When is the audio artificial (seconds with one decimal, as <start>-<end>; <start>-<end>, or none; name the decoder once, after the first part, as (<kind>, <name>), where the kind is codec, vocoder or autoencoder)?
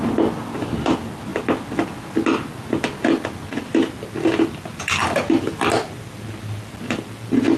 none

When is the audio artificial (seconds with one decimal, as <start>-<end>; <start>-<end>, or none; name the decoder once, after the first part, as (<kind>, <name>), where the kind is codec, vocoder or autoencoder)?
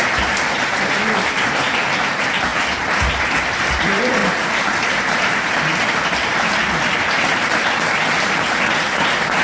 4.2-5.6 (vocoder, BigVGAN v2)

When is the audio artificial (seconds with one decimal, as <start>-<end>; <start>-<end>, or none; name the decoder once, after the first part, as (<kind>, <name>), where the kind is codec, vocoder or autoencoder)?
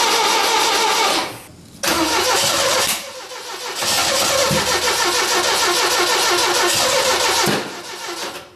0.4-1.5 (vocoder, BigVGAN v2); 1.9-3.3; 4.0-5.3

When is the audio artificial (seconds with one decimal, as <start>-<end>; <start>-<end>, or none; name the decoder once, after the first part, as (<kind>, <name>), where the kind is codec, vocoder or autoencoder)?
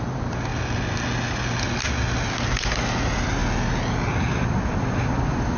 0.0-0.5 (vocoder, BigVGAN v2); 2.5-3.4; 4.1-5.6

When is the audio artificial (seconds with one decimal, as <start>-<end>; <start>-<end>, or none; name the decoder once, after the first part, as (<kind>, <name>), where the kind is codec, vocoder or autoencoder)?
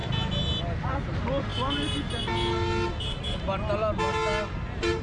none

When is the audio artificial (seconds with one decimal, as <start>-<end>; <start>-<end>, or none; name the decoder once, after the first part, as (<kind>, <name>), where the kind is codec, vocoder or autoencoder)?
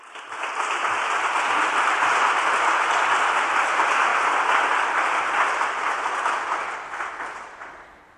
none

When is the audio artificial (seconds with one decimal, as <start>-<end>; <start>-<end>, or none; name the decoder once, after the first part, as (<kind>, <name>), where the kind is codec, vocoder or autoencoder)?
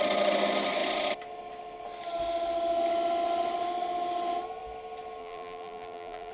5.2-6.3 (vocoder, BigVGAN v2)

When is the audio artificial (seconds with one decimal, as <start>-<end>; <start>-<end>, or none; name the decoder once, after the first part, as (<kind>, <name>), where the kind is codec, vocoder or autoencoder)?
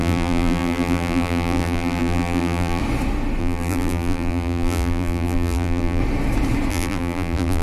0.0-2.8 (vocoder, BigVGAN v2); 3.4-6.0; 6.7-7.6